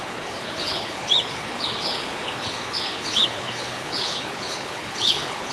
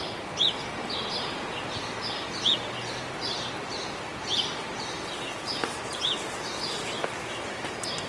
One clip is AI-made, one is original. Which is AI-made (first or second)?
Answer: first